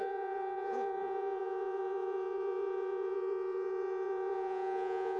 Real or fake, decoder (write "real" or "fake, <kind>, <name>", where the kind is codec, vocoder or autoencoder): fake, vocoder, Vocos